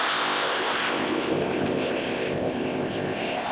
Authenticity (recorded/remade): remade